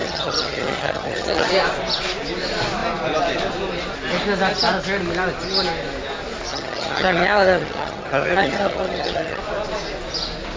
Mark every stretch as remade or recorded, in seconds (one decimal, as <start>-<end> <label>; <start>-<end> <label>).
0.0-1.5 remade; 1.5-6.5 recorded; 6.5-9.4 remade; 9.4-10.6 recorded